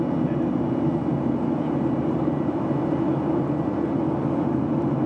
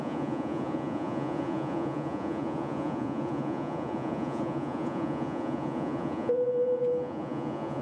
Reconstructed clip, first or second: second